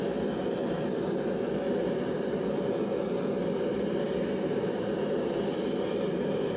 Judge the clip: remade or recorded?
recorded